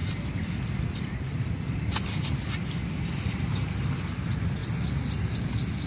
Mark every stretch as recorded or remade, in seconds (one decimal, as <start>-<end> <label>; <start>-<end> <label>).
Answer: 0.0-5.9 recorded